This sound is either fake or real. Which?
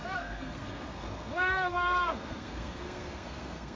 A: fake